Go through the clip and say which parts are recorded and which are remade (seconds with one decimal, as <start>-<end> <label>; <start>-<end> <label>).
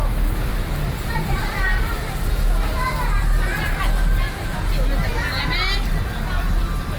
0.0-0.5 recorded; 0.5-2.1 remade; 2.1-7.0 recorded